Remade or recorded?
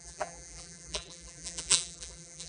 remade